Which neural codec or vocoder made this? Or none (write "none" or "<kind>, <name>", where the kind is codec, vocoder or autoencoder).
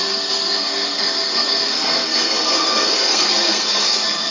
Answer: codec, SNAC